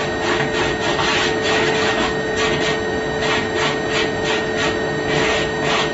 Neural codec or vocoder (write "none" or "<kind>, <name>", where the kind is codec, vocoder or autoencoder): none